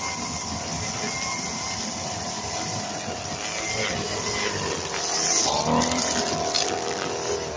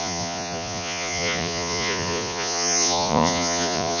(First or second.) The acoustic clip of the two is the first